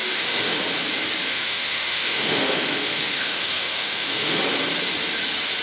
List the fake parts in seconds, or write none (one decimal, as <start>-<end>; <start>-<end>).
0.0-0.6; 1.3-4.4